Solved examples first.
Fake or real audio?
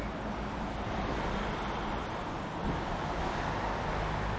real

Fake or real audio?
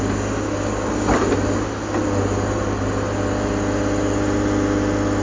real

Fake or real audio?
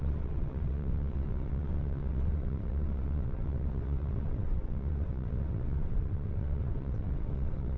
fake